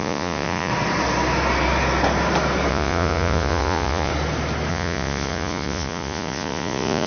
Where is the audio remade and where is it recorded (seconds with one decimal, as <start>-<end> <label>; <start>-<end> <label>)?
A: 0.0-0.7 remade; 0.7-2.7 recorded; 2.7-4.1 remade; 4.1-4.7 recorded; 4.7-7.1 remade